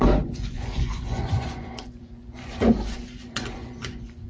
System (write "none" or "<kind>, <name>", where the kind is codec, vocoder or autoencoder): vocoder, Vocos